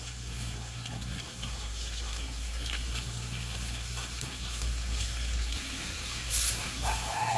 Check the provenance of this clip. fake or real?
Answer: fake